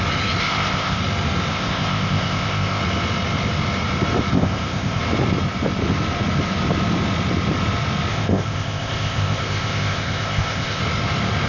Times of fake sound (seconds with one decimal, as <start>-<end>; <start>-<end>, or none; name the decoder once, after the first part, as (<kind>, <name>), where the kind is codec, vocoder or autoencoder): 0.4-1.0 (codec, ZipCodec); 1.5-2.8; 4.3-5.0; 8.1-10.8